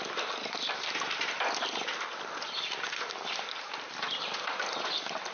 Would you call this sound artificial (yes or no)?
no